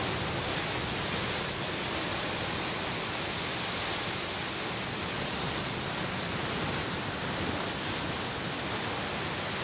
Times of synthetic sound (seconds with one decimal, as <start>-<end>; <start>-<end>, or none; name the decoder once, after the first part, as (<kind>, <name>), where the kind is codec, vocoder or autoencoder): none